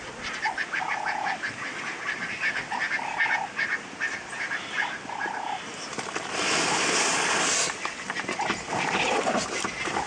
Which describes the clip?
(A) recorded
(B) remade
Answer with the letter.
A